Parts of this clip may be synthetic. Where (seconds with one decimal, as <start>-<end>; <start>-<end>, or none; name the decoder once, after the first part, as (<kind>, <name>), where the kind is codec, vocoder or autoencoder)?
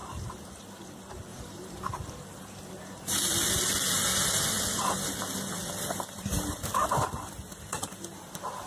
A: 0.0-0.9 (vocoder, BigVGAN v2); 1.3-3.2; 6.7-8.7